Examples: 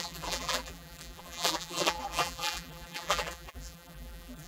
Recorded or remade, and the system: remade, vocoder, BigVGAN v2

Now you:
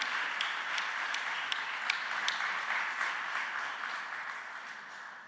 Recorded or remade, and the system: recorded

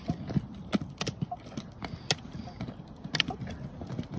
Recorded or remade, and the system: recorded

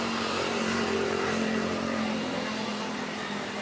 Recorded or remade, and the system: remade, vocoder, BigVGAN v2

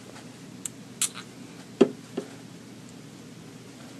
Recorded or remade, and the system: recorded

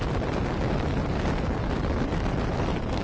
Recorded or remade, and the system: recorded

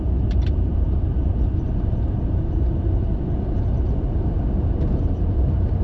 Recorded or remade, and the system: remade, vocoder, BigVGAN v2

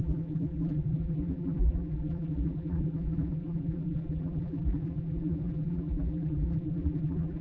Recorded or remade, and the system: remade, vocoder, BigVGAN v2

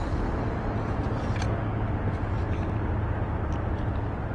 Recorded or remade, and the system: recorded